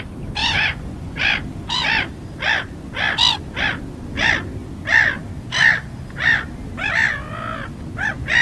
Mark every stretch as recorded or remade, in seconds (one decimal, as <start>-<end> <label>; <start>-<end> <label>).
0.0-0.4 recorded; 0.4-1.1 remade; 1.1-8.4 recorded